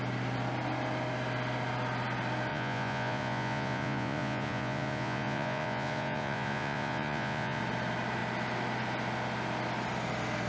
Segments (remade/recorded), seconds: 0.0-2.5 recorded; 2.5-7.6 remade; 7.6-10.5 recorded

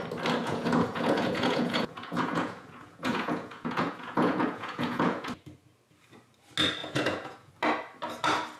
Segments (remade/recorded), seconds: 0.0-0.4 recorded; 0.4-5.3 remade; 5.3-6.8 recorded; 6.8-7.5 remade; 7.5-8.6 recorded